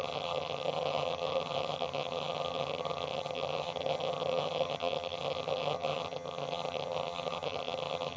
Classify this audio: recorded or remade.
remade